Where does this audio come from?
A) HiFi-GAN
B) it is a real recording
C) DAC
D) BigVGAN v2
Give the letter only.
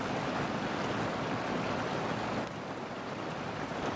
B